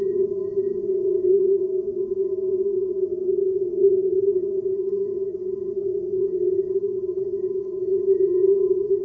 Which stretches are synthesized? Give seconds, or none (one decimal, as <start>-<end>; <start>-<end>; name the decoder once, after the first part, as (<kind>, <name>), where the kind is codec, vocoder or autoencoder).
0.0-9.0 (vocoder, Vocos)